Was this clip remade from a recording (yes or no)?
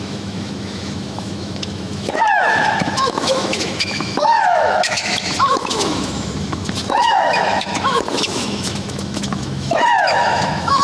yes